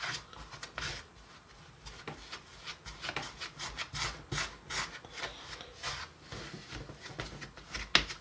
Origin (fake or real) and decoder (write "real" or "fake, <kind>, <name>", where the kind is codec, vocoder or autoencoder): real